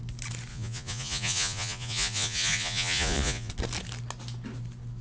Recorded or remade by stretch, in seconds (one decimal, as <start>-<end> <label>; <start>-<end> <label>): 0.0-0.5 recorded; 0.5-3.5 remade; 3.5-5.0 recorded